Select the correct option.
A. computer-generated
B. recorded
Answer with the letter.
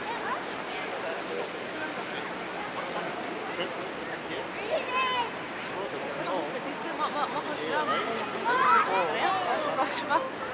B